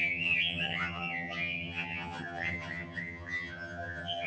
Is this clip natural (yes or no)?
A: no